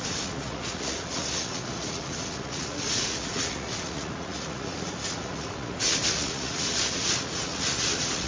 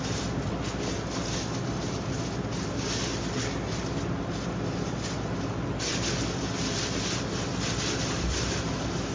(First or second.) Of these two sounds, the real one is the second